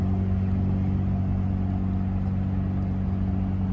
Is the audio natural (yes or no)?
yes